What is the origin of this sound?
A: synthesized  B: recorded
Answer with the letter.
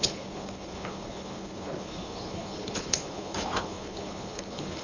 A